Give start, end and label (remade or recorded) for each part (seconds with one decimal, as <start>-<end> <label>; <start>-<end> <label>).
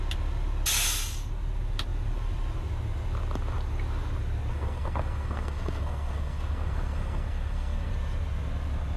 0.0-4.5 recorded; 4.5-7.9 remade; 7.9-9.0 recorded